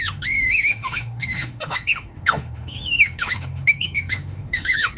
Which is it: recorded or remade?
remade